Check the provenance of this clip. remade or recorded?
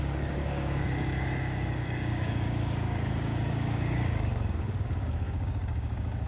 remade